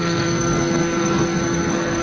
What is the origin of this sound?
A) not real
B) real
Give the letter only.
A